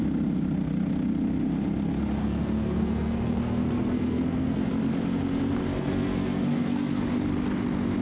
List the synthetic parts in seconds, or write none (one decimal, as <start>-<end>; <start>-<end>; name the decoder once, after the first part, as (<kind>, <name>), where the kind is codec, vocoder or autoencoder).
2.2-4.7 (codec, SNAC); 5.7-7.0